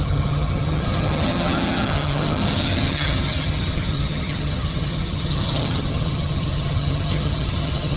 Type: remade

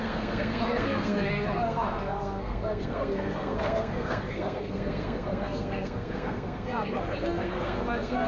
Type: remade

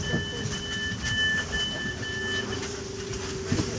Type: recorded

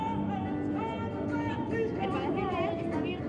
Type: recorded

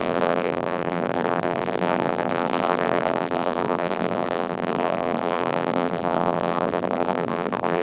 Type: remade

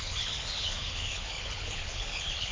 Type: remade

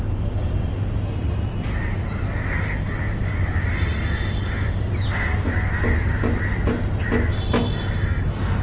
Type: recorded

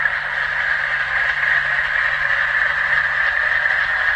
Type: recorded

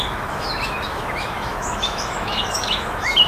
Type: remade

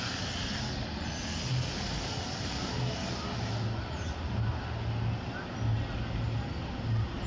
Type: recorded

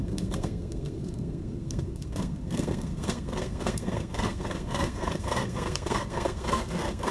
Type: remade